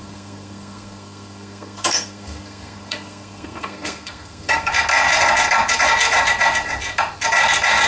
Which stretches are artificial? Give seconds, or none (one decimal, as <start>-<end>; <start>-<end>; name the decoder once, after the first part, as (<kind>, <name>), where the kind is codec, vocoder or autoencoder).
0.0-4.7 (codec, SNAC)